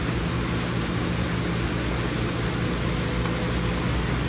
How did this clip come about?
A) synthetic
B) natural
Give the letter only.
B